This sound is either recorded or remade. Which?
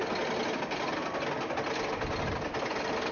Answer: recorded